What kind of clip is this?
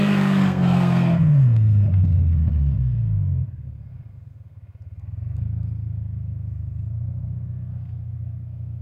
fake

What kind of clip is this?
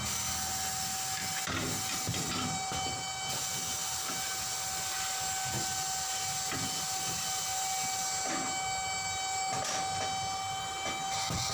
real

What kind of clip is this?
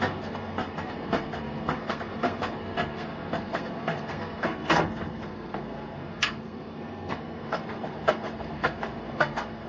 fake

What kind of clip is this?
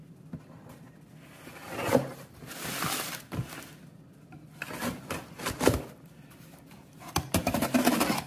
real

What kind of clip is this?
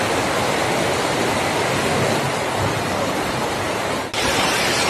real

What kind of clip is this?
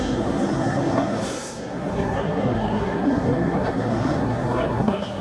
fake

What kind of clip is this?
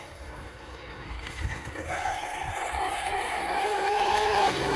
fake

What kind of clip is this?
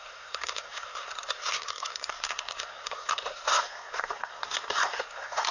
fake